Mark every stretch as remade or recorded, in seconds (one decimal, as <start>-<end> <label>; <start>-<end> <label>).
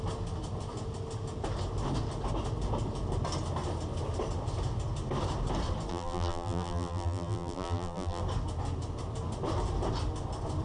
0.0-5.9 recorded; 5.9-8.2 remade; 8.2-10.6 recorded